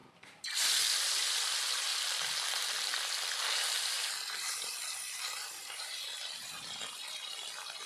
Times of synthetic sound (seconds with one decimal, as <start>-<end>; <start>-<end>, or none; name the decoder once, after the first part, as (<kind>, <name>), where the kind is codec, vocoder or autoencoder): 1.3-1.9 (vocoder, BigVGAN v2); 4.5-7.9